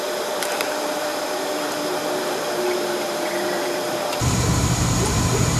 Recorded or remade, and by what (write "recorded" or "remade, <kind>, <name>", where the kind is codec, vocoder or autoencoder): remade, vocoder, BigVGAN v2